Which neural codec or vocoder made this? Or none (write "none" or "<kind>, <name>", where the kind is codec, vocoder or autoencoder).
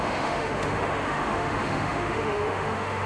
autoencoder, DAC-VAE